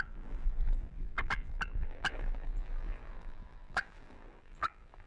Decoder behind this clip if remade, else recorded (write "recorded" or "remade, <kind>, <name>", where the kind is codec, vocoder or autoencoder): remade, vocoder, BigVGAN v2